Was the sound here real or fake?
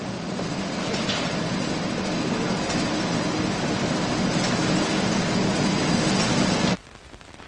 real